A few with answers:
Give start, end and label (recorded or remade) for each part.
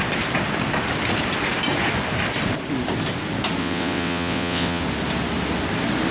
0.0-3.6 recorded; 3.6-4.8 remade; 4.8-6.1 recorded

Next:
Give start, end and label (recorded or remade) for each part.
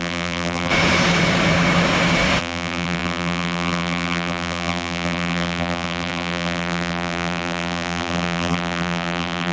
0.0-0.7 remade; 0.7-2.4 recorded; 2.4-9.5 remade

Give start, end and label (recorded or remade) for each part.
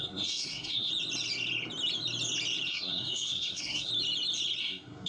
0.0-0.9 remade; 0.9-2.7 recorded; 2.7-3.9 remade; 3.9-4.6 recorded; 4.6-5.1 remade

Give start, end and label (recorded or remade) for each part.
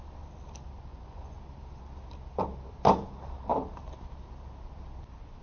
0.0-0.9 recorded; 0.9-1.4 remade; 1.4-5.4 recorded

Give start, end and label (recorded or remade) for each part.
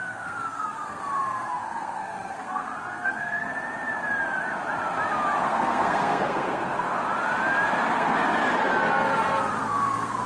0.0-1.0 remade; 1.0-1.5 recorded; 1.5-3.5 remade; 3.5-5.4 recorded; 5.4-7.0 remade; 7.0-7.9 recorded; 7.9-8.4 remade; 8.4-9.6 recorded; 9.6-10.3 remade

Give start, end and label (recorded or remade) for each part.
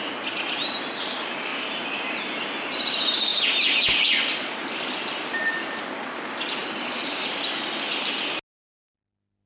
0.0-9.5 recorded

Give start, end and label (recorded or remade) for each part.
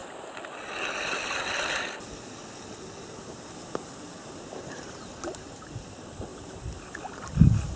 0.0-4.7 recorded; 4.7-6.3 remade; 6.3-7.8 recorded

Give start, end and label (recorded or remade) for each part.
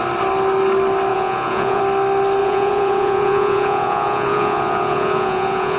0.0-1.1 recorded; 1.1-1.8 remade; 1.8-2.4 recorded; 2.4-5.8 remade